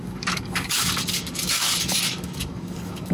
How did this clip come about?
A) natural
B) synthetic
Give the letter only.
B